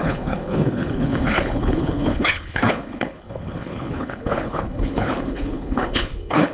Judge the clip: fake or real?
fake